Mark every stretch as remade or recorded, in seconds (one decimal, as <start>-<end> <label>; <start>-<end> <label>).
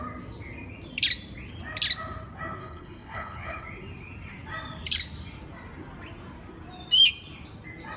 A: 0.0-2.6 recorded; 2.6-3.6 remade; 3.6-8.0 recorded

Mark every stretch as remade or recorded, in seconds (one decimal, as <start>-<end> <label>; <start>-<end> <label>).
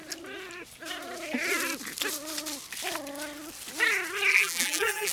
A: 0.0-4.3 recorded; 4.3-5.1 remade